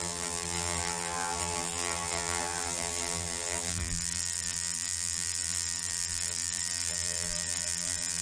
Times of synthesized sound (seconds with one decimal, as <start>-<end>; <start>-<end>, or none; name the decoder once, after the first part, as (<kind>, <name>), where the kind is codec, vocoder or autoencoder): 0.0-8.2 (vocoder, BigVGAN v2)

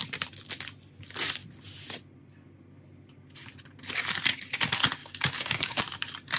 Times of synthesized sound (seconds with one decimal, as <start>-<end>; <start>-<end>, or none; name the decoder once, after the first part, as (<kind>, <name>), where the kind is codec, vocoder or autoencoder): 5.0-5.8 (codec, DAC)

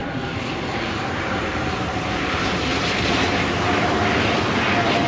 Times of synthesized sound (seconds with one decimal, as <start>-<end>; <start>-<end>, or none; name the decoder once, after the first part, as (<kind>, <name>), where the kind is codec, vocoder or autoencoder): 0.0-2.7 (vocoder, BigVGAN v2); 4.4-5.1

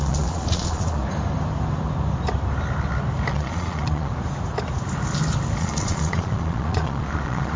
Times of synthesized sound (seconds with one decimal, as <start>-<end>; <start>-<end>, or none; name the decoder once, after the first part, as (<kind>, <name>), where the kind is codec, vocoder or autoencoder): 0.0-1.0 (vocoder, Vocos); 3.3-4.1; 5.6-7.6

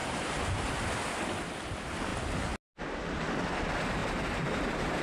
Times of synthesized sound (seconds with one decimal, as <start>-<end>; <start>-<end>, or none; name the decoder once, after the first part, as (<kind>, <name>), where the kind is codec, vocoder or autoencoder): 0.0-0.7 (vocoder, BigVGAN v2); 4.0-5.0

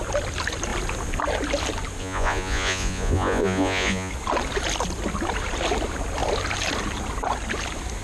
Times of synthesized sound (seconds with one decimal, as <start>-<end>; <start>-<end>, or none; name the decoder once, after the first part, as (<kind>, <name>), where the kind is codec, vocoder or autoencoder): 2.0-4.1 (vocoder, Vocos)

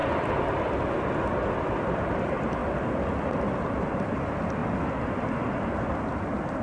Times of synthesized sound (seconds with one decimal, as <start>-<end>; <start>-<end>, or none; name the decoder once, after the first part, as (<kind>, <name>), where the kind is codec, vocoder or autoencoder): none